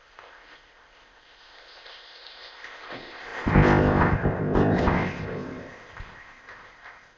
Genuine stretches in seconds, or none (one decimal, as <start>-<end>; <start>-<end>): none